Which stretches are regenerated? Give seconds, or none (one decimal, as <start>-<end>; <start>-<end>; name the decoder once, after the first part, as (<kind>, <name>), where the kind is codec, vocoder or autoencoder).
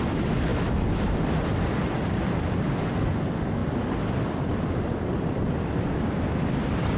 3.6-5.8 (vocoder, BigVGAN v2)